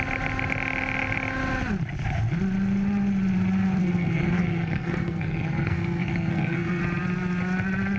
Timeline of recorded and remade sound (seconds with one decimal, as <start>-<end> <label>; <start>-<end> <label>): 0.0-3.8 recorded; 3.8-6.8 remade; 6.8-8.0 recorded